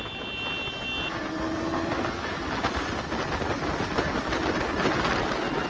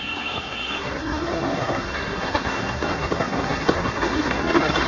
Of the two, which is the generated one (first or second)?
second